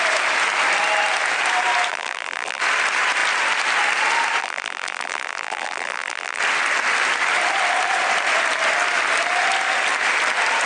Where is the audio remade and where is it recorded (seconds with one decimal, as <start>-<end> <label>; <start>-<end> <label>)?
0.0-1.9 recorded; 1.9-2.6 remade; 2.6-4.4 recorded; 4.4-6.4 remade; 6.4-10.7 recorded